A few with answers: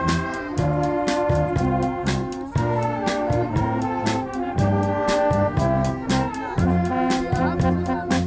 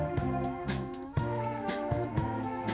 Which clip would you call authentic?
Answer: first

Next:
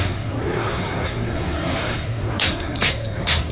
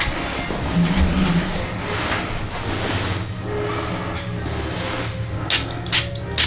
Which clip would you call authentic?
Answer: second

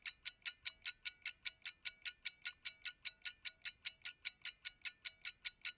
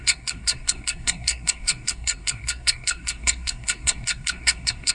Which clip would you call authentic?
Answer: first